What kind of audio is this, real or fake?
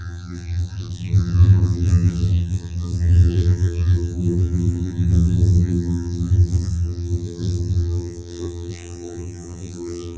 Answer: fake